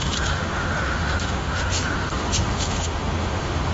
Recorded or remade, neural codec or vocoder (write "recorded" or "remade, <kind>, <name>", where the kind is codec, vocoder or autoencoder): remade, autoencoder, DAC-VAE